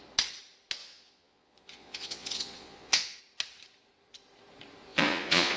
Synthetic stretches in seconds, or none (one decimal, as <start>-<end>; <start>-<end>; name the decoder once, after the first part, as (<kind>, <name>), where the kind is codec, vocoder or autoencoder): 0.8-3.2 (vocoder, Vocos); 4.9-5.6